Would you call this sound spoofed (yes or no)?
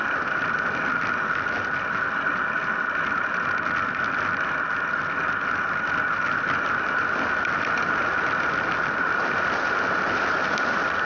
no